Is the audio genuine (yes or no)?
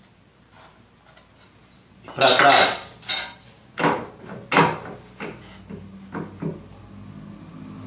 yes